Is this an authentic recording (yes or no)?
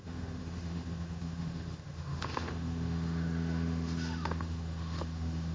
no